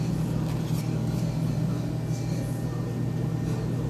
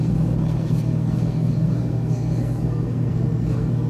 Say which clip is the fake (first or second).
second